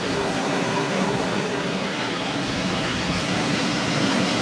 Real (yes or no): no